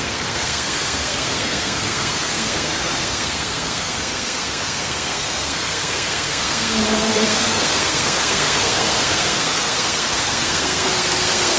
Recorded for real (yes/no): no